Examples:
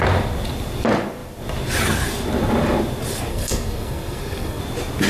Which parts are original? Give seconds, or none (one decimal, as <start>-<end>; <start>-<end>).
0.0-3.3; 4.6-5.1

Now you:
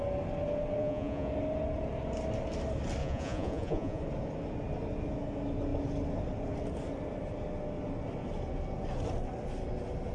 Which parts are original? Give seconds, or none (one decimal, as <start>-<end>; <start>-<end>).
0.0-0.8; 1.3-3.0; 4.0-10.1

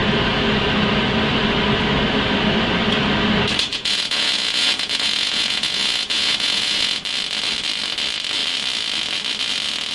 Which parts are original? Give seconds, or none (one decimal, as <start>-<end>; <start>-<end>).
0.0-3.7; 7.0-9.9